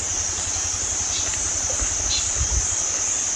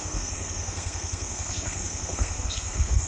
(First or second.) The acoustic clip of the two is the first